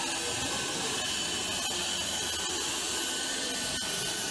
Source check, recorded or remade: recorded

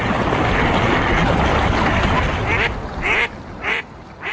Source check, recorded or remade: recorded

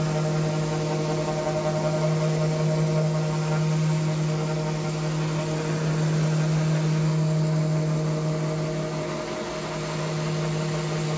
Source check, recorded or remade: recorded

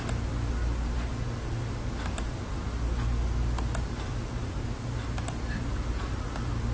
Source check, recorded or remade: recorded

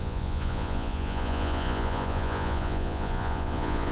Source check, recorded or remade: remade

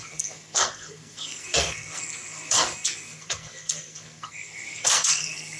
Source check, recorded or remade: remade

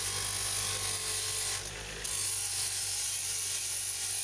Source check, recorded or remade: recorded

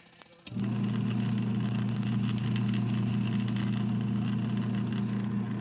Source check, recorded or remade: recorded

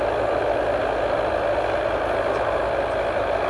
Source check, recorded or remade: recorded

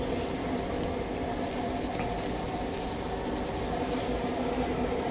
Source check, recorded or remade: recorded